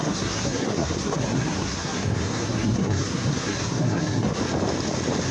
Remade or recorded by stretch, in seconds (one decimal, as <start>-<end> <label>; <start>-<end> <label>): 0.0-4.4 remade; 4.4-5.3 recorded